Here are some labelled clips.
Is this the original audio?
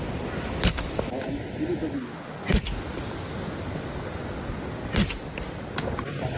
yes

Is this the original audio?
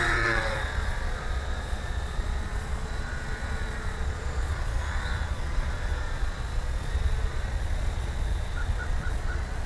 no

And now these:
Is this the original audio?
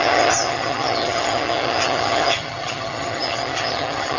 no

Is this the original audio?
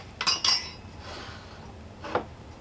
yes